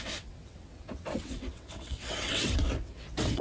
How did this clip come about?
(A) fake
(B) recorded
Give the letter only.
A